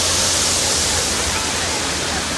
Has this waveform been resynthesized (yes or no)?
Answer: no